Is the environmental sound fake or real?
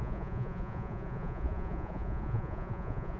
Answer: fake